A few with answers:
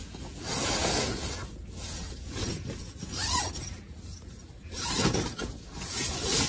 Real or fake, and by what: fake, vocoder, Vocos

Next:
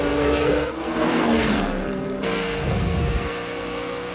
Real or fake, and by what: fake, codec, SNAC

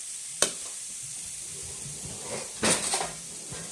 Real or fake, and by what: fake, vocoder, BigVGAN v2